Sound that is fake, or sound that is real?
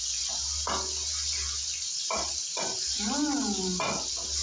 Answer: real